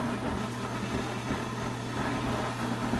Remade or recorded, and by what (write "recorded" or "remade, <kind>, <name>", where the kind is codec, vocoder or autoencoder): recorded